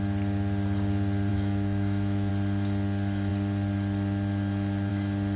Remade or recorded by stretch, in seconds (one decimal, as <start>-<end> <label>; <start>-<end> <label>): 0.0-1.3 recorded; 1.3-2.3 remade; 2.3-5.4 recorded